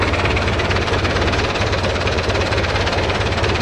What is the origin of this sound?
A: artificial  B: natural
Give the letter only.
A